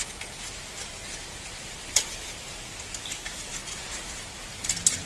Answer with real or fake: real